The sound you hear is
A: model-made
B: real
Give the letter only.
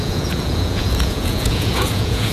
A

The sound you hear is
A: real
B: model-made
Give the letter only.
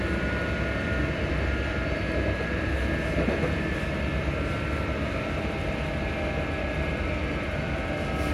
A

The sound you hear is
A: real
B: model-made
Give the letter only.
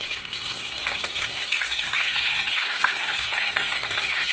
B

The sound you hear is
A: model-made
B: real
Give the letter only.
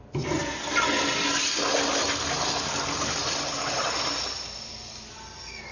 B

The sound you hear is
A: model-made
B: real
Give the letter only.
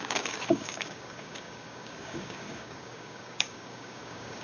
A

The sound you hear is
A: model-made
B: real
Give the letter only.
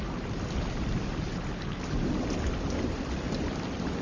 B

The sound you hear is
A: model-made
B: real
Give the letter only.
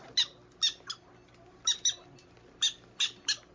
B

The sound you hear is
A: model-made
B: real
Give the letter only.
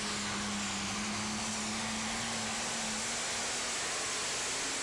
B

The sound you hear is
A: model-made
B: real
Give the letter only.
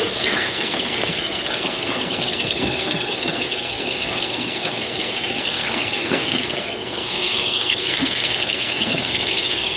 A